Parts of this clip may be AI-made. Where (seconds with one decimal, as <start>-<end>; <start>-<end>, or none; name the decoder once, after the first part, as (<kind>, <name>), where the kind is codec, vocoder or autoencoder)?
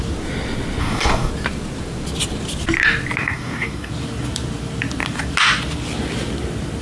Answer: 0.8-1.3 (codec, DAC); 3.2-3.9